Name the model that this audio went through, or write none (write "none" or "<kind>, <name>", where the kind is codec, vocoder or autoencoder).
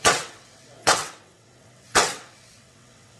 vocoder, WaveNeXt